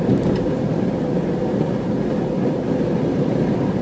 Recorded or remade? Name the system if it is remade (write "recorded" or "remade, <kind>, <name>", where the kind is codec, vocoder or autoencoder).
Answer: recorded